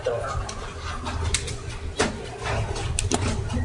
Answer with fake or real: real